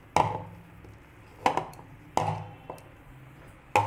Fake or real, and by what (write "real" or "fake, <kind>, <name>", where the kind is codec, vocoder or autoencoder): real